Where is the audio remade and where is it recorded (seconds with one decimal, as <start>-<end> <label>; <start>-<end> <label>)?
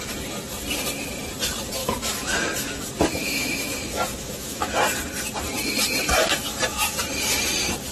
0.0-1.8 recorded; 1.8-2.8 remade; 2.8-3.2 recorded; 3.2-4.8 remade; 4.8-7.9 recorded